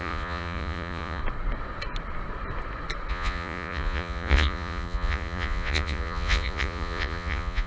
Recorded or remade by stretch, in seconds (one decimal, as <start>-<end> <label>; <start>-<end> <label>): 0.0-1.2 remade; 1.2-3.1 recorded; 3.1-7.7 remade

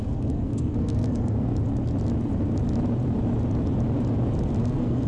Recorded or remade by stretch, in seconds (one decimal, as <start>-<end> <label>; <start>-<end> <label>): 0.0-1.5 remade; 1.5-4.6 recorded; 4.6-5.1 remade